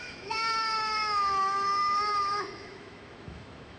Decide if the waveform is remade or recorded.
remade